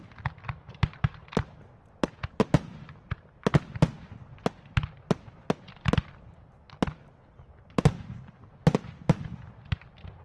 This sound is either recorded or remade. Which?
recorded